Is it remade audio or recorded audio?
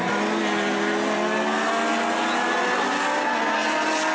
recorded